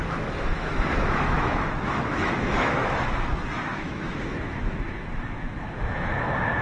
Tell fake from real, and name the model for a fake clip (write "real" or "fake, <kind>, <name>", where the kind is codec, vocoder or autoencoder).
fake, autoencoder, DAC-VAE